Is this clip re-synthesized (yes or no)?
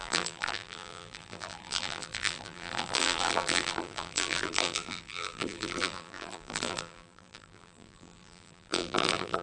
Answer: yes